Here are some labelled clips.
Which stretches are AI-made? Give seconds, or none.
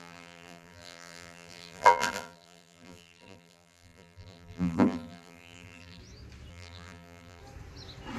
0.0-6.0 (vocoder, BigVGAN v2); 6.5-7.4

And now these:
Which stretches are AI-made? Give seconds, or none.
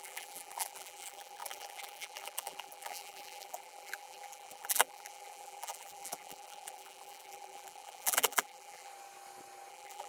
0.0-8.9 (vocoder, BigVGAN v2); 9.7-10.1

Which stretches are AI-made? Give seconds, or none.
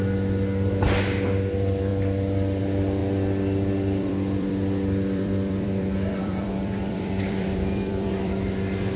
3.0-8.3 (vocoder, BigVGAN v2)